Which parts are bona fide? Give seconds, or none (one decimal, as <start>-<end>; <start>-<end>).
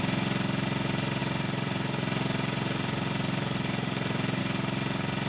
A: 0.0-1.2; 4.4-5.3